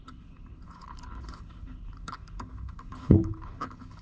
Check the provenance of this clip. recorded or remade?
remade